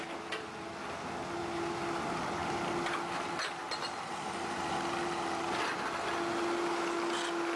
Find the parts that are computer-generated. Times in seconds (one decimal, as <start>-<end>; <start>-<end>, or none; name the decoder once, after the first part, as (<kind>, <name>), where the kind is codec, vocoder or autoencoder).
none